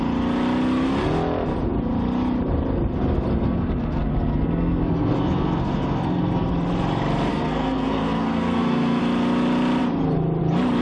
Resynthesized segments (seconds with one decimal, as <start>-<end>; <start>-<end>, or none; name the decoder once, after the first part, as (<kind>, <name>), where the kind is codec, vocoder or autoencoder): 3.3-6.5 (codec, SNAC); 7.3-9.0